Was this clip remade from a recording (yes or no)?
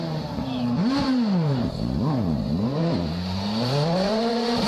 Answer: yes